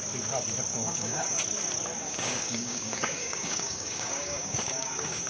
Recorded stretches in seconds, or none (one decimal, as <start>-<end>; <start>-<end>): 0.0-0.7; 1.4-2.0